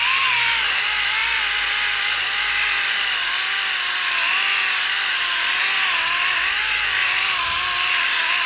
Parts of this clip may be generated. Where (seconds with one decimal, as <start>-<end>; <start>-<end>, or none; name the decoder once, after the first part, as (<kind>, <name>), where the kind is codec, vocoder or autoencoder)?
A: none